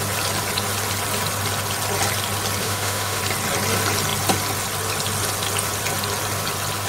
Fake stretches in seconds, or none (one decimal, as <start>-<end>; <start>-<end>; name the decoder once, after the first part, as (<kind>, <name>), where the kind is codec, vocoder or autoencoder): 2.6-3.2 (autoencoder, DAC-VAE)